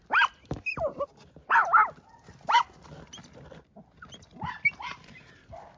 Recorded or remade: recorded